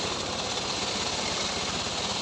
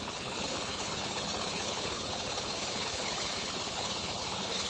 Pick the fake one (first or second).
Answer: second